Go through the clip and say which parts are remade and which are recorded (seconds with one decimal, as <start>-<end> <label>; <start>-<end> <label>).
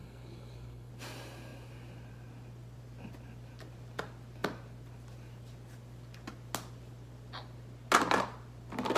0.0-0.9 remade; 0.9-9.0 recorded